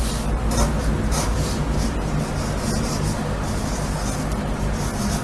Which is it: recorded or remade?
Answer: recorded